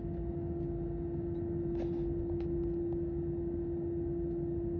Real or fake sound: real